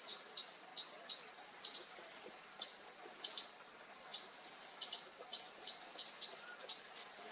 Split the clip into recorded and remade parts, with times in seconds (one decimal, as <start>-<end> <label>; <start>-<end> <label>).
0.0-7.3 recorded